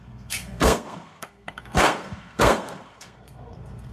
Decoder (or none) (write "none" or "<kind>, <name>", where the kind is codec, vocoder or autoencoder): codec, SNAC